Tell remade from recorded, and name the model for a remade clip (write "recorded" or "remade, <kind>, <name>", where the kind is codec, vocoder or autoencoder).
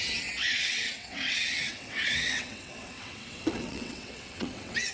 remade, vocoder, WaveNeXt